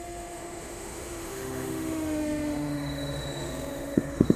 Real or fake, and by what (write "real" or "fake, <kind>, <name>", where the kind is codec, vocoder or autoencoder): fake, autoencoder, DAC-VAE